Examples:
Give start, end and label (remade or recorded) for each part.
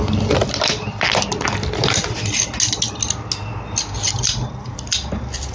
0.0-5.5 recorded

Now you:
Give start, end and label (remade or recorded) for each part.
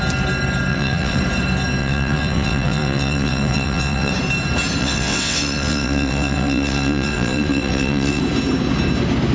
0.0-0.7 recorded; 0.7-1.2 remade; 1.2-1.8 recorded; 1.8-4.1 remade; 4.1-4.8 recorded; 4.8-8.2 remade; 8.2-9.3 recorded